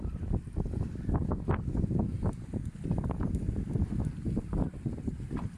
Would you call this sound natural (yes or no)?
yes